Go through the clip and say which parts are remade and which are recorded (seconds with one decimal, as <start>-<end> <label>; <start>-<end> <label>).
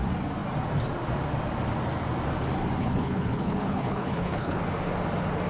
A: 0.0-2.8 recorded; 2.8-4.6 remade; 4.6-5.5 recorded